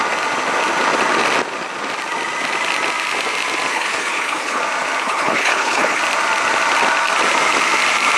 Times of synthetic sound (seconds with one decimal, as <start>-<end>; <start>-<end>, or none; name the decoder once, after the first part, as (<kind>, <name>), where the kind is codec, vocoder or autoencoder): 3.7-4.6 (codec, HILCodec); 5.0-6.0